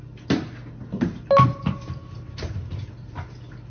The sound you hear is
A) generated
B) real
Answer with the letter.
B